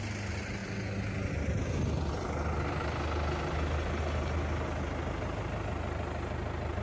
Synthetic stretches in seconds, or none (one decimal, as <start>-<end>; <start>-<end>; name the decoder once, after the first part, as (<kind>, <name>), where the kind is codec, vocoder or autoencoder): none

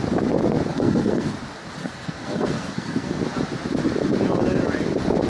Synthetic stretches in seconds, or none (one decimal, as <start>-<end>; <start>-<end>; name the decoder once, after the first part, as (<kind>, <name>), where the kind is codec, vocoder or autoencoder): 0.7-1.3 (codec, SNAC); 1.8-3.2